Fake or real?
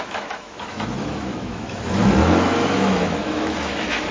fake